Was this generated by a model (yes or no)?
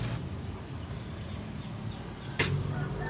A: no